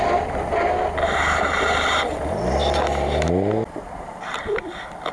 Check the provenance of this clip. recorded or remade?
recorded